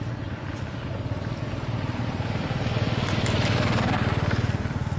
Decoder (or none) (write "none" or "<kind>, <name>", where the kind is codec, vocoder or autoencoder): vocoder, BigVGAN v2